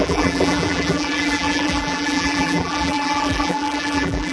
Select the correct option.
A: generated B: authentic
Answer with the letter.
A